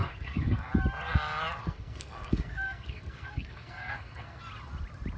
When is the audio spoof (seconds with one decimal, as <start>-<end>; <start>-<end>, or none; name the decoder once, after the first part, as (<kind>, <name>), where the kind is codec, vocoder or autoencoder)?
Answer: 0.0-0.7 (codec, SNAC); 1.6-4.4

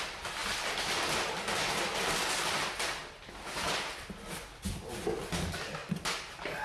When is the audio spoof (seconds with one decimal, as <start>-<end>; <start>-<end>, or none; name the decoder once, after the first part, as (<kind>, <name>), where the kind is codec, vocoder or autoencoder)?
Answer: none

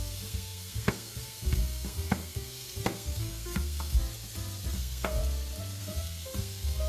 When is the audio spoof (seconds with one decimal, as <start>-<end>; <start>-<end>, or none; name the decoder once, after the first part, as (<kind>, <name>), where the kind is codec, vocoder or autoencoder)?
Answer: 0.0-4.0 (codec, SNAC); 4.7-5.2; 5.8-6.9

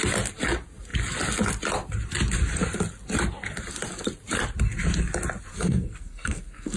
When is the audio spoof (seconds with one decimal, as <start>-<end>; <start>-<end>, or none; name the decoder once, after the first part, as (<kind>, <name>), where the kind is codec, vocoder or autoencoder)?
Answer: 5.5-6.8 (codec, SNAC)

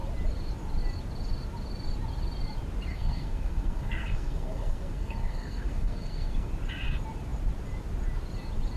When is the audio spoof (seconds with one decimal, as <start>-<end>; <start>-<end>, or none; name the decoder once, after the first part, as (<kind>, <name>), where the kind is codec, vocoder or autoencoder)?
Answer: 2.9-6.5 (codec, SNAC)

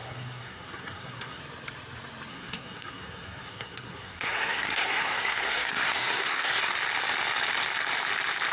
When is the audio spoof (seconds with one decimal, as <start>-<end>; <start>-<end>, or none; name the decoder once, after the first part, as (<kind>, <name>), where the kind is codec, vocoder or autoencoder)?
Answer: 0.0-1.4 (codec, SNAC); 2.3-6.7

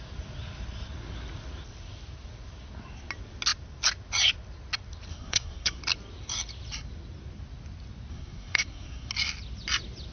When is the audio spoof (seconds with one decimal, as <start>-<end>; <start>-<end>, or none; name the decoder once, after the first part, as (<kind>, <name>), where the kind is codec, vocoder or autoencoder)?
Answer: 5.1-5.8 (codec, SNAC); 8.1-9.1

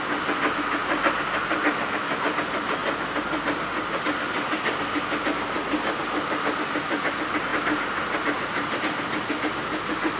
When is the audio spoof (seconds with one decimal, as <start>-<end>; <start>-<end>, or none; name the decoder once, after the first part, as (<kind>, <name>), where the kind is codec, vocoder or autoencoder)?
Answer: none